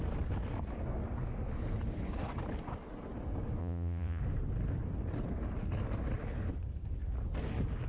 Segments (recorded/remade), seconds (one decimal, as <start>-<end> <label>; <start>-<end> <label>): 0.0-3.6 recorded; 3.6-4.2 remade; 4.2-7.9 recorded